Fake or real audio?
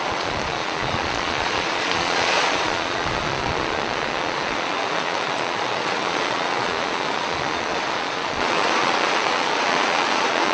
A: fake